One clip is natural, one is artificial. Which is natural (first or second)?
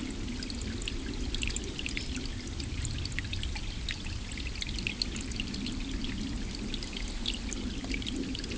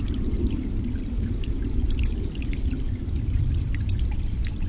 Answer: first